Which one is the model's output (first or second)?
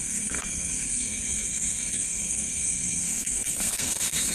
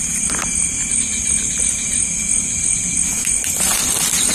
first